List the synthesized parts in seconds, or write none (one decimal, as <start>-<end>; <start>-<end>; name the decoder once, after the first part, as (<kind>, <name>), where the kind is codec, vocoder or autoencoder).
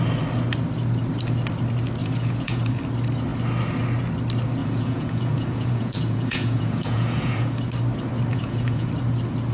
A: 2.0-2.8 (vocoder, Vocos); 4.6-7.7; 8.3-8.9